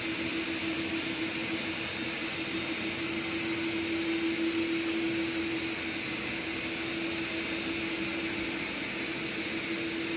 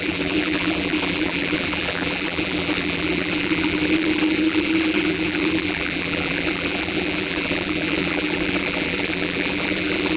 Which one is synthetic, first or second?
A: second